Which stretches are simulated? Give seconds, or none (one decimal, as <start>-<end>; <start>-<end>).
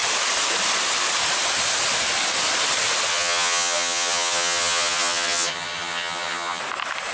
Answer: 3.1-6.6